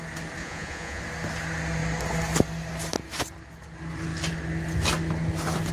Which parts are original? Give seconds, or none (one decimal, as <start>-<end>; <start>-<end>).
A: 0.0-0.4; 1.0-5.7